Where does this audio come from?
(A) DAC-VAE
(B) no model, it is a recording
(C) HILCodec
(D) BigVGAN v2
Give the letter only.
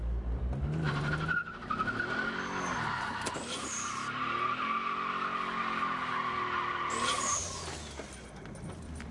B